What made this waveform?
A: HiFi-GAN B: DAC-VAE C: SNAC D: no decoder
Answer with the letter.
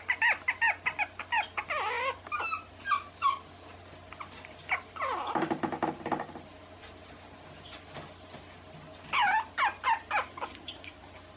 D